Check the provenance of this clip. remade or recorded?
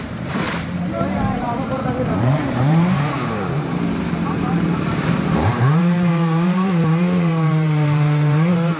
remade